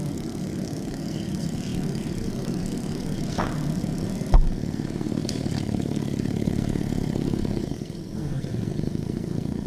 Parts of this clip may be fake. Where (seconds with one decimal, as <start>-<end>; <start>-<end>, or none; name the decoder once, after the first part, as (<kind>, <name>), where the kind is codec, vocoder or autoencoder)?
0.0-9.7 (codec, SNAC)